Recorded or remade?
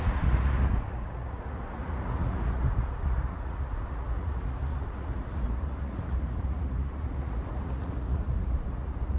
remade